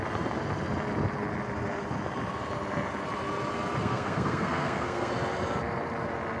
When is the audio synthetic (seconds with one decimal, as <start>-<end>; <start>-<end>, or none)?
3.8-5.1